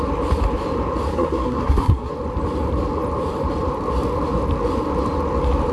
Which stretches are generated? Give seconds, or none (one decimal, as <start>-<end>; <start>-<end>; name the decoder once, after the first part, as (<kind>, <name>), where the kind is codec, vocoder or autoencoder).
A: 1.1-2.1 (codec, SNAC)